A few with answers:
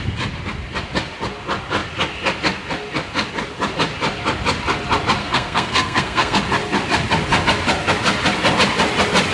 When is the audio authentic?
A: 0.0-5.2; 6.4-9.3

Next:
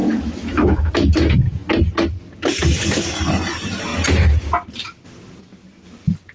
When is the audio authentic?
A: 0.9-6.3